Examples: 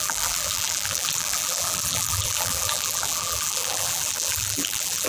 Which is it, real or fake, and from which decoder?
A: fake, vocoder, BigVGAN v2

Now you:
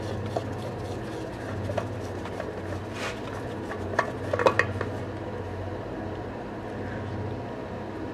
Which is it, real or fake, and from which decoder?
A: real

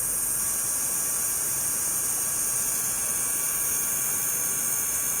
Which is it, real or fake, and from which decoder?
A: fake, vocoder, BigVGAN v2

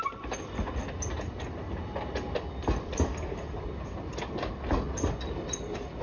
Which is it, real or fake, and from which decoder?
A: real